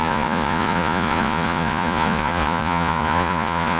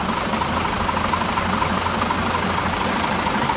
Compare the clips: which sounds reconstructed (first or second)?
first